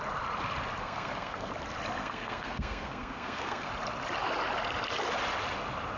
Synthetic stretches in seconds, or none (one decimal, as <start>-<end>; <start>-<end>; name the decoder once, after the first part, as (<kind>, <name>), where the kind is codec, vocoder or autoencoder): 0.8-1.5 (codec, SNAC); 2.0-3.7